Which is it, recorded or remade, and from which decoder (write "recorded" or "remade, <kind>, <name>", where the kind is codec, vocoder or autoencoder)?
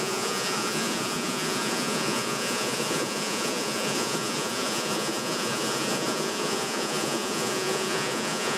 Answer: remade, vocoder, Vocos